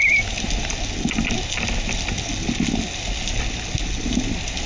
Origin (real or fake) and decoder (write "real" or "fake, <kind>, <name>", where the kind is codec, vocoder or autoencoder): real